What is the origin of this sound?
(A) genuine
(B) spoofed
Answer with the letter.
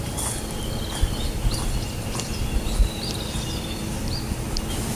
A